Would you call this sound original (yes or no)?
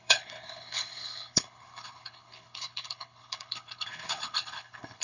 no